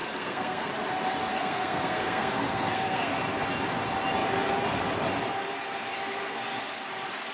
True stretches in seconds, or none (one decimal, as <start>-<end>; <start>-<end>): 0.7-1.3; 3.1-7.3